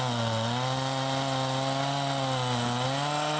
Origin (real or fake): real